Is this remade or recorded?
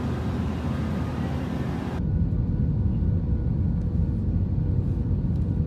recorded